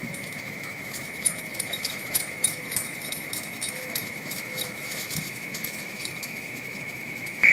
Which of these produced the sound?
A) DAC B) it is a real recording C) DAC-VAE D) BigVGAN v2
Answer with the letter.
C